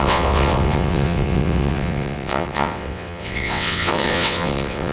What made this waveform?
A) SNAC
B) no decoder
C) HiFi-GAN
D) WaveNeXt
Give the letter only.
D